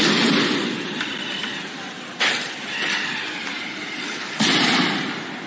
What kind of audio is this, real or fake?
real